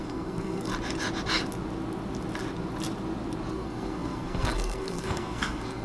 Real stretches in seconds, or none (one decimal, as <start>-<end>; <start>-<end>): 0.7-3.5